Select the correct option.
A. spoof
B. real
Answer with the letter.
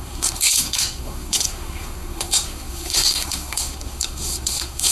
A